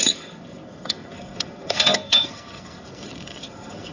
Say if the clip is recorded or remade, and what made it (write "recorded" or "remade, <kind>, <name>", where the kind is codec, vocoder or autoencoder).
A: remade, codec, SNAC